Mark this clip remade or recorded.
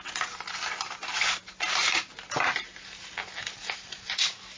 recorded